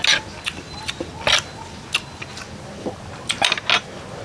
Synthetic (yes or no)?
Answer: no